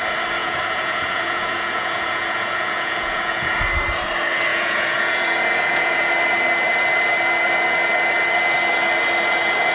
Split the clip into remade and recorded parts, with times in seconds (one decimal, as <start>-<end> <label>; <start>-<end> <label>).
0.0-0.4 recorded; 0.4-3.6 remade; 3.6-4.5 recorded; 4.5-6.1 remade; 6.1-9.7 recorded